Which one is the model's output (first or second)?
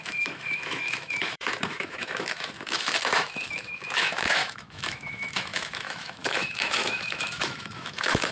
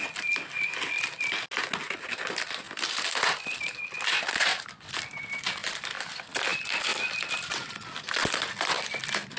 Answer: first